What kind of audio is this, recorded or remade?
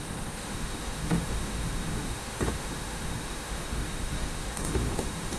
remade